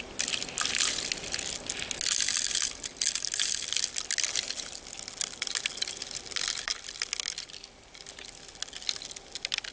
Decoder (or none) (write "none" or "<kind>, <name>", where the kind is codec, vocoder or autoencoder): none